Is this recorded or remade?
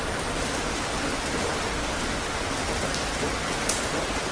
remade